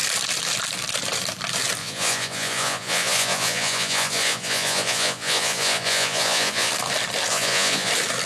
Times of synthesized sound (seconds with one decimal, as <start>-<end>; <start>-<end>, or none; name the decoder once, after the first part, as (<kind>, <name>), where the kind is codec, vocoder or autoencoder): 1.8-6.7 (vocoder, Vocos); 7.3-7.9